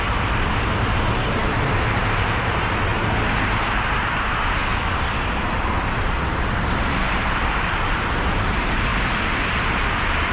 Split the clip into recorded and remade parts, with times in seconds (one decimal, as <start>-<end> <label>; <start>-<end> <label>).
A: 0.0-4.6 remade; 4.6-6.2 recorded; 6.2-8.9 remade; 8.9-9.6 recorded; 9.6-10.3 remade